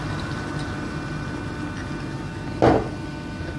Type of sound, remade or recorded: recorded